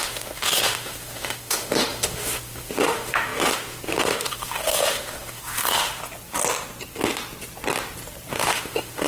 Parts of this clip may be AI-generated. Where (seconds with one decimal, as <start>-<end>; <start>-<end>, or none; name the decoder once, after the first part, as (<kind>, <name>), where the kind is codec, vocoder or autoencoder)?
0.0-6.0 (autoencoder, DAC-VAE); 8.3-9.1